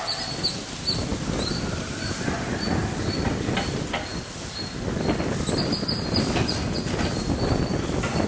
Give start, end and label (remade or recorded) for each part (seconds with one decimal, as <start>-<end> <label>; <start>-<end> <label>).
0.0-8.3 recorded